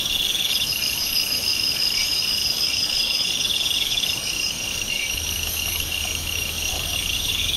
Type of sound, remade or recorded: remade